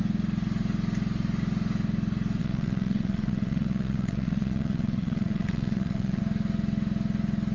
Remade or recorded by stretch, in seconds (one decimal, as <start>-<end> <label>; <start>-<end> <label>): 0.0-2.4 recorded; 2.4-6.2 remade; 6.2-7.5 recorded